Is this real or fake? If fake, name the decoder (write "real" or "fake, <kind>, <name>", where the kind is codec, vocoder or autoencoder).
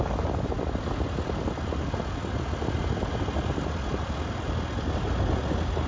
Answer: real